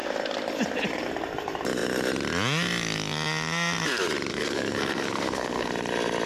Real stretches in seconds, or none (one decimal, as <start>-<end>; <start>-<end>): 0.0-4.3; 5.7-6.3